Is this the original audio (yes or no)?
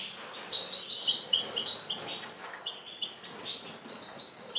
yes